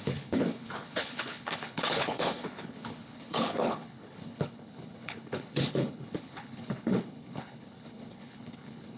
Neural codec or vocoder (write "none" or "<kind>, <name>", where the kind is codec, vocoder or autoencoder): codec, HILCodec